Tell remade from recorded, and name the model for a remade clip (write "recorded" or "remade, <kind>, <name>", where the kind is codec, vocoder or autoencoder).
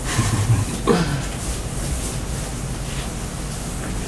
recorded